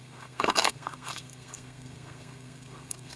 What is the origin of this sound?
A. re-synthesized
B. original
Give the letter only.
A